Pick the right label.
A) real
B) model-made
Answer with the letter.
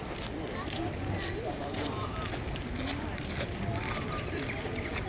B